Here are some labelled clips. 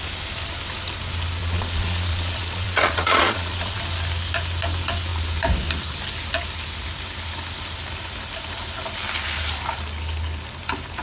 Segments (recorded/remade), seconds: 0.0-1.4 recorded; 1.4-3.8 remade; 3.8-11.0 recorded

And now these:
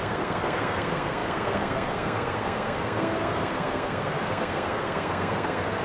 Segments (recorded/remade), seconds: 0.0-5.8 remade

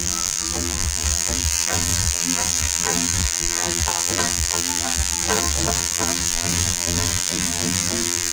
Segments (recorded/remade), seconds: 0.0-8.3 remade

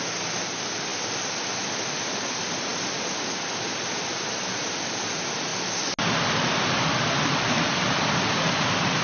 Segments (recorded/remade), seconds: 0.0-9.0 recorded

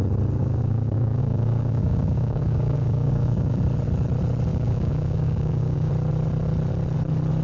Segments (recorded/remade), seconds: 0.0-0.4 recorded; 0.4-3.6 remade; 3.6-4.5 recorded; 4.5-5.9 remade; 5.9-7.4 recorded

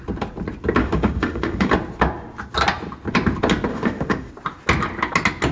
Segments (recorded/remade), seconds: 0.0-0.8 recorded; 0.8-1.7 remade; 1.7-3.7 recorded; 3.7-4.3 remade; 4.3-5.5 recorded

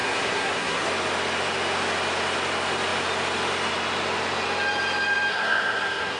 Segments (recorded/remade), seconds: 0.0-0.9 remade; 0.9-5.3 recorded; 5.3-6.2 remade